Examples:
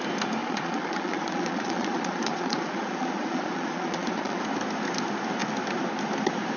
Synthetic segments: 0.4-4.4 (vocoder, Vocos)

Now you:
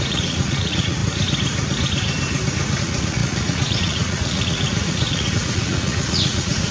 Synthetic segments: 0.0-1.0 (vocoder, Vocos); 2.8-6.7

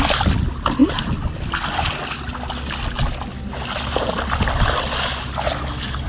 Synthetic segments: none

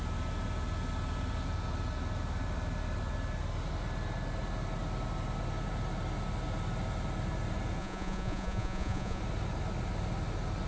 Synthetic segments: 7.8-9.2 (vocoder, Vocos)

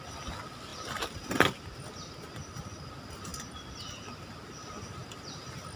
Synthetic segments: none

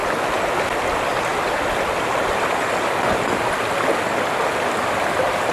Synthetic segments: none

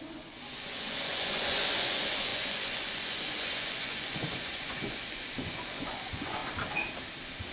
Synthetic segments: 0.0-6.4 (vocoder, Vocos)

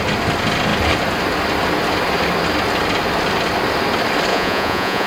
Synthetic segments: 4.3-5.1 (vocoder, Vocos)